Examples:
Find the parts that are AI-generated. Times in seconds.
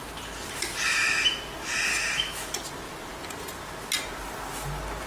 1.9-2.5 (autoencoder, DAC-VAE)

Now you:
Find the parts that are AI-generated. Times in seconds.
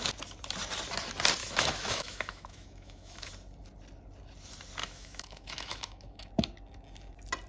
1.4-3.3 (autoencoder, DAC-VAE); 4.8-6.3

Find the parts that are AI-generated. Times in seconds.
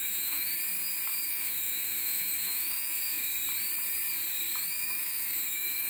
0.0-0.5 (autoencoder, DAC-VAE); 1.3-3.3; 4.7-5.9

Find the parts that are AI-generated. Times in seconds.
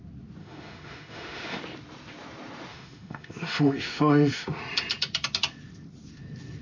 0.4-1.6 (autoencoder, DAC-VAE); 2.7-4.6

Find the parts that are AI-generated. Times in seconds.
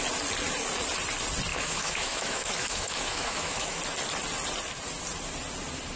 1.5-3.8 (autoencoder, DAC-VAE)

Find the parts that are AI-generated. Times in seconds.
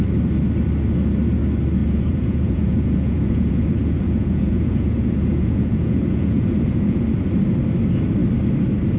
1.8-7.0 (vocoder, Vocos)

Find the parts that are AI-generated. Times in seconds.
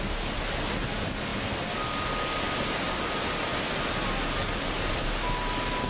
none